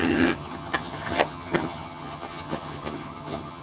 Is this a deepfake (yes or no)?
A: yes